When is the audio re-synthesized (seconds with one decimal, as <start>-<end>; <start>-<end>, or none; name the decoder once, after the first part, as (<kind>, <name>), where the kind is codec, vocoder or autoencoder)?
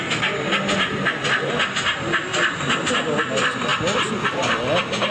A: none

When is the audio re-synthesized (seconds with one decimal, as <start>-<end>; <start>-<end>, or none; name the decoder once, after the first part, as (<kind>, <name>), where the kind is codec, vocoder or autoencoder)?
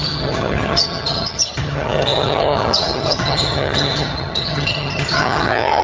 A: 0.0-5.8 (vocoder, HiFi-GAN)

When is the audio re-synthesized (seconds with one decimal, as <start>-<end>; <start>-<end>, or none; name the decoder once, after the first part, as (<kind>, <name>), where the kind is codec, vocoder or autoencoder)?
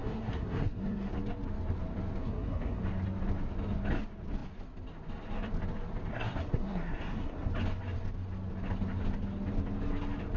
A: 0.0-1.1 (codec, SNAC); 2.2-2.8; 6.1-7.5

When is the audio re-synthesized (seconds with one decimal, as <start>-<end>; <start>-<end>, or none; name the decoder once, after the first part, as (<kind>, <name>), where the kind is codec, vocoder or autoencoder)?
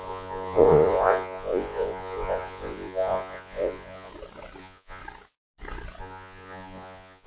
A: 0.0-4.1 (vocoder, Vocos); 4.6-5.0; 6.0-7.3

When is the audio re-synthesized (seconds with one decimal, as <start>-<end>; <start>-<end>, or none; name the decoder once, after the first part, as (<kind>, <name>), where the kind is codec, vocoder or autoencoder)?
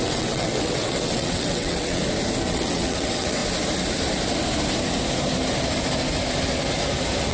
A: 0.0-2.0 (vocoder, WaveNeXt); 2.5-3.4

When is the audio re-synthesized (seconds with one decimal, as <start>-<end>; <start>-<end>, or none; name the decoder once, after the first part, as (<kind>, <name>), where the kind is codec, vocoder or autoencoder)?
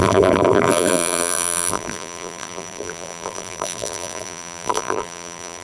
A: 0.0-5.6 (vocoder, BigVGAN v2)